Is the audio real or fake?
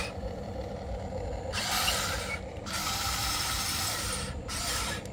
fake